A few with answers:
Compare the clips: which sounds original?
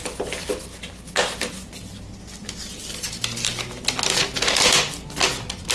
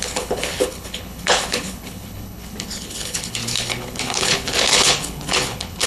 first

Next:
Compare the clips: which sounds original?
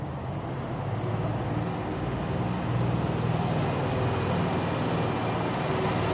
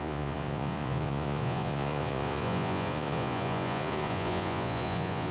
first